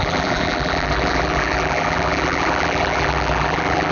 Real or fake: fake